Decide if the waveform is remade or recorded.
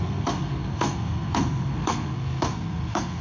remade